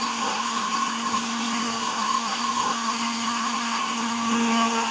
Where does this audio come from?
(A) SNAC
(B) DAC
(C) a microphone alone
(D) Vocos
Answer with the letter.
A